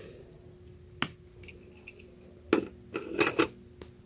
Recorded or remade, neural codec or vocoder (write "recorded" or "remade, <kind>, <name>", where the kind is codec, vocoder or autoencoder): recorded